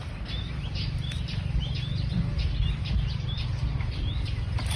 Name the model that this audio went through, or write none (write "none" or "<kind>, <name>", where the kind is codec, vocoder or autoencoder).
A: none